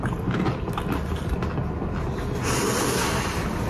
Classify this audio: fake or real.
real